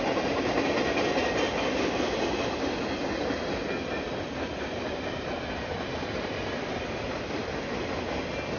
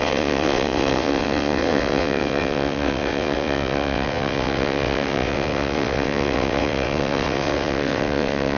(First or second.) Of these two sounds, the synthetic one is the second